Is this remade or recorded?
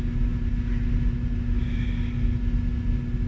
recorded